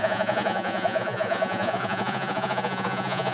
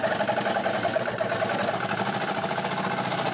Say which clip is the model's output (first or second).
first